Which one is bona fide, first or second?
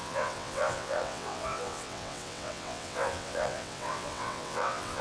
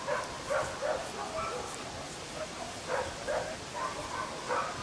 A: second